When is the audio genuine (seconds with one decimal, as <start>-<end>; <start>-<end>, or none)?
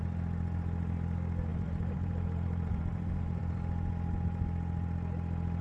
0.0-1.5; 3.4-5.6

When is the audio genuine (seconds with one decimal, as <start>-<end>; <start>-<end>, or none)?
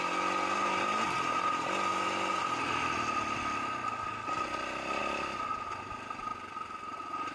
0.0-7.3